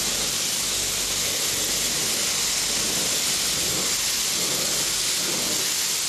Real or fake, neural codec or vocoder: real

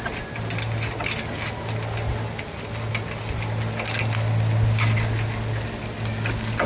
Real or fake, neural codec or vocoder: real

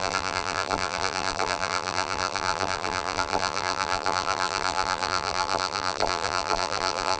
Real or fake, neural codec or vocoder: fake, vocoder, BigVGAN v2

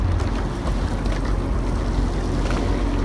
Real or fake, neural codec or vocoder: real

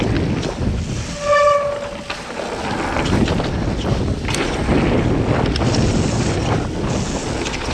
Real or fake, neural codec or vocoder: real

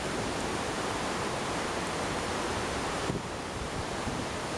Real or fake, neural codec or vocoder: fake, vocoder, BigVGAN v2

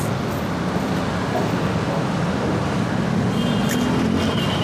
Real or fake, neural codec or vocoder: real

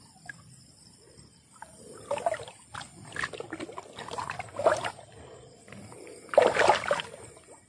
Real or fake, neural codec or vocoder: real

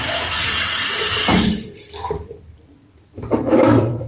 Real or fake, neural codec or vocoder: fake, vocoder, BigVGAN v2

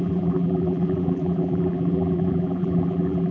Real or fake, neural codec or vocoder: fake, vocoder, BigVGAN v2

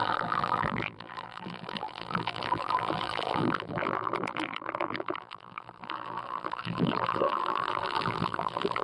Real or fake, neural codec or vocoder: fake, vocoder, BigVGAN v2